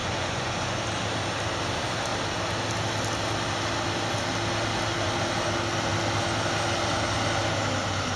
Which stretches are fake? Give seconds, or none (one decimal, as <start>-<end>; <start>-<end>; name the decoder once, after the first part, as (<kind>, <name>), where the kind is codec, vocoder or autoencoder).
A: 0.0-0.8 (vocoder, Vocos)